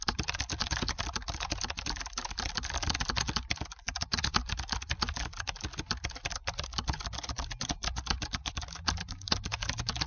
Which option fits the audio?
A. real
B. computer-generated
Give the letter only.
A